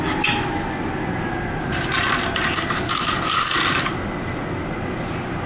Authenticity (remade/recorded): recorded